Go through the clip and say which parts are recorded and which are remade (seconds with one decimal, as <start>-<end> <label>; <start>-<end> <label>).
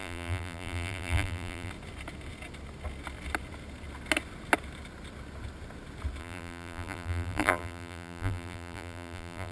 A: 0.0-1.7 remade; 1.7-6.2 recorded; 6.2-9.5 remade